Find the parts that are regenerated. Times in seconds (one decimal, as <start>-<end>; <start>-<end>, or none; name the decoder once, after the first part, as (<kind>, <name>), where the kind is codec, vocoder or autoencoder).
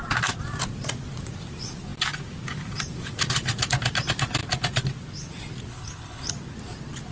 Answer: 5.7-6.3 (codec, HILCodec)